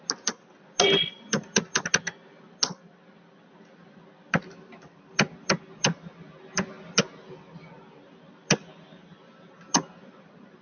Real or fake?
real